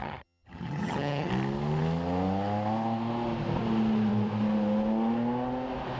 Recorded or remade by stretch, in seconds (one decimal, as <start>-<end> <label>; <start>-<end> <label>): 0.0-1.3 remade; 1.3-6.0 recorded